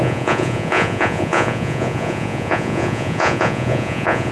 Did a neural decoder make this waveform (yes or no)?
yes